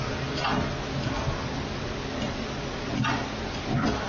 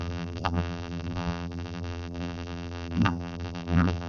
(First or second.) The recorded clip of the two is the first